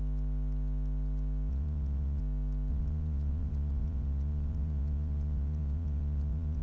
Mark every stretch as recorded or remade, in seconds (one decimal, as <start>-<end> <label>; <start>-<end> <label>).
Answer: 0.0-1.5 recorded; 1.5-2.2 remade; 2.2-2.7 recorded; 2.7-6.6 remade